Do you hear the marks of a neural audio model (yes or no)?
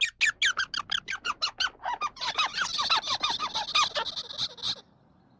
no